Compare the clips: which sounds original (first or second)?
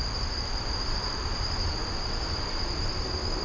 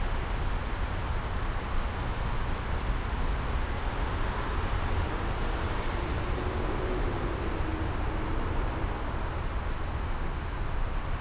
second